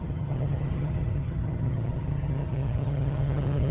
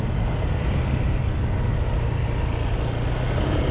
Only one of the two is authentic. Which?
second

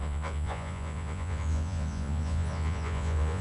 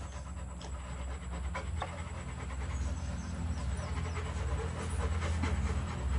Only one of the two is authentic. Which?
second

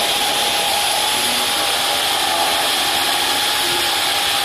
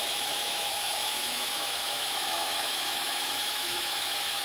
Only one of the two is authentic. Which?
first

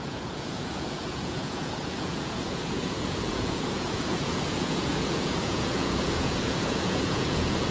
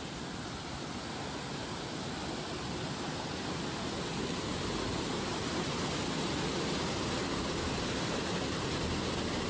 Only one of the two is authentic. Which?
second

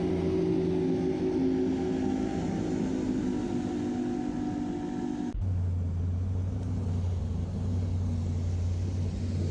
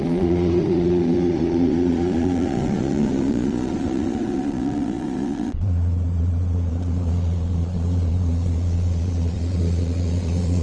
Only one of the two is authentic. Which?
first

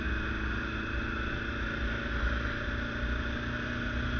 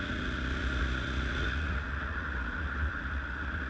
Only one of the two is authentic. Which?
first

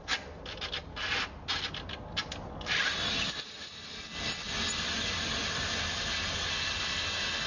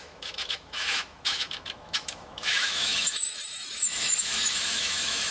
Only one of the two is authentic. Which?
first